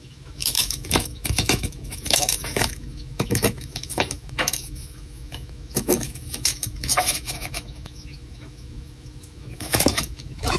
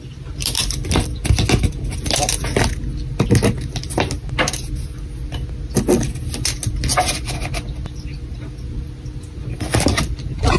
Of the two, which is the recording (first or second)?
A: second